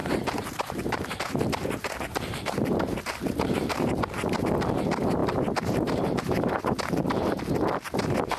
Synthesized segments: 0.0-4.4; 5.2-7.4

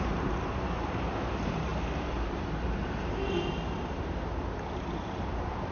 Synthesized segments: 0.0-5.7

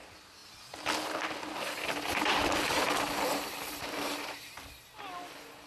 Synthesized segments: none

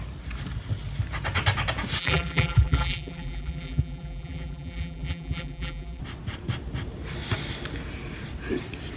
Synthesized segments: 2.0-6.0

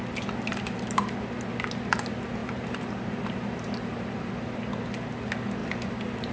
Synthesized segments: 0.5-1.0; 2.4-4.3; 5.6-6.3

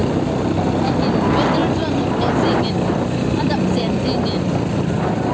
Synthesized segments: 0.0-1.1